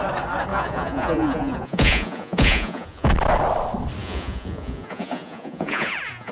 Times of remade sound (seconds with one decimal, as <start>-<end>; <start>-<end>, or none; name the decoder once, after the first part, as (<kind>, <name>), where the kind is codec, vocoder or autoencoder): 0.5-3.1 (vocoder, Vocos); 4.0-6.3